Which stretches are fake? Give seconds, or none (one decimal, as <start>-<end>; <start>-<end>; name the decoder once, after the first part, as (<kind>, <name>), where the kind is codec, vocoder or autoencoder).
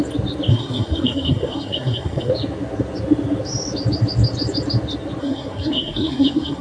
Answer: 0.5-2.3 (codec, SNAC); 5.2-6.6